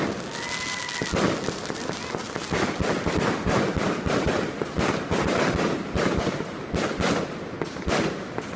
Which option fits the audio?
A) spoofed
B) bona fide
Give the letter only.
B